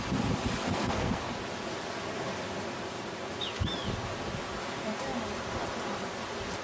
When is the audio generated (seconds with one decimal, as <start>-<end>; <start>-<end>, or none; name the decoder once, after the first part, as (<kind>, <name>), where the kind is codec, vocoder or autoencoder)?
0.6-1.3 (codec, SNAC)